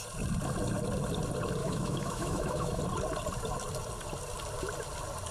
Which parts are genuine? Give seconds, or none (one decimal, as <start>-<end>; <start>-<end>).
0.0-1.6; 2.8-5.3